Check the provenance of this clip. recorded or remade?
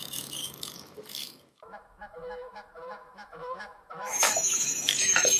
remade